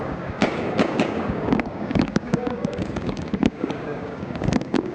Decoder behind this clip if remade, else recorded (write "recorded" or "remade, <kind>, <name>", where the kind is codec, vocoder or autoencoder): remade, codec, DAC